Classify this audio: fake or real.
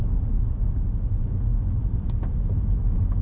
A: real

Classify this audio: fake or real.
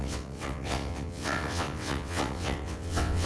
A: fake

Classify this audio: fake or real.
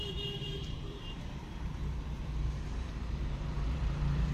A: fake